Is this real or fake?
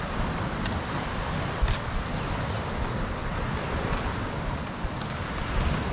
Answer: real